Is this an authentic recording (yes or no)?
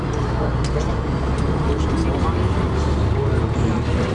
yes